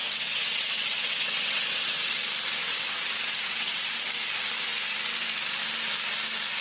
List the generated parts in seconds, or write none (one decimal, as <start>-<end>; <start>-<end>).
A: 0.0-2.1; 2.6-4.0